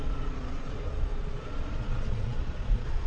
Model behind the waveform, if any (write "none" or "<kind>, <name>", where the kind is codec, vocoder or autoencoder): vocoder, Vocos